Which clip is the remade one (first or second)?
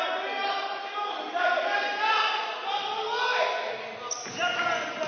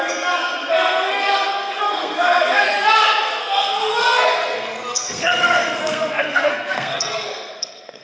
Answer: second